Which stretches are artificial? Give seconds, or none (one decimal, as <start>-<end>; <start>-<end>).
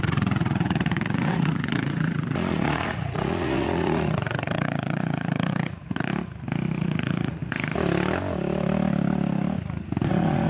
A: 0.0-6.1; 6.8-7.4; 10.1-10.5